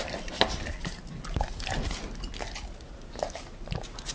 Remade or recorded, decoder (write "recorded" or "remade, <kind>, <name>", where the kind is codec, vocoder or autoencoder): recorded